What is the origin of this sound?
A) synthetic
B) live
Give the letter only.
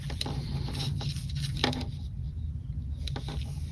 B